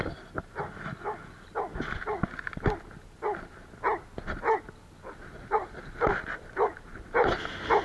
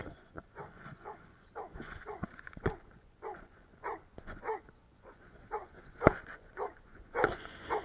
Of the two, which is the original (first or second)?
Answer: first